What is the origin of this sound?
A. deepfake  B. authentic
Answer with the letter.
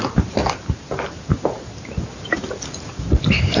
B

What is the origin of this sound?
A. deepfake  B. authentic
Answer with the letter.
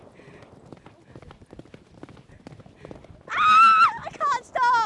B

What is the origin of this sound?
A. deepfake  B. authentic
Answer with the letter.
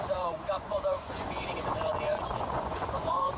A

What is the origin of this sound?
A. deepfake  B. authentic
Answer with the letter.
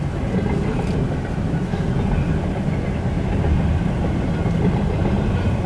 B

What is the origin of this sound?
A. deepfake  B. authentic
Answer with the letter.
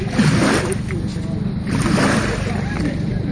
B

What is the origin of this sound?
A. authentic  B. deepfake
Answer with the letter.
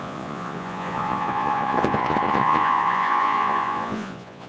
B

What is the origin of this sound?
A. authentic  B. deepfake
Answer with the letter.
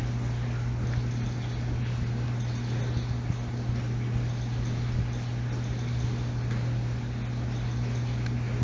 A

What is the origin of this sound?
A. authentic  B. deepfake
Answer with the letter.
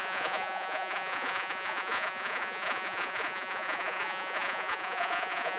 B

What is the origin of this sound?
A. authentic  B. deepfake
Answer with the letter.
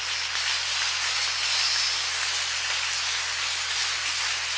A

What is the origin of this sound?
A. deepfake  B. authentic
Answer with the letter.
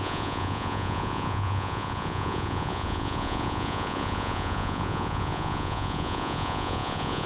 A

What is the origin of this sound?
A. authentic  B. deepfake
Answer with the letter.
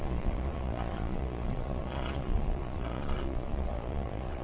B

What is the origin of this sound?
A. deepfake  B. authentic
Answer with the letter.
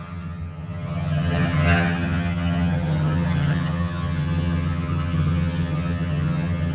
A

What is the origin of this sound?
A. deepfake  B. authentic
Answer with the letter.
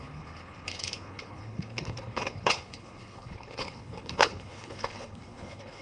A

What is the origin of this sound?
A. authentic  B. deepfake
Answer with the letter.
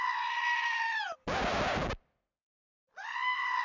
A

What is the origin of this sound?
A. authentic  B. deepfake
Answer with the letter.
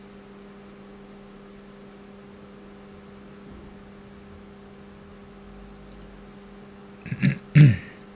A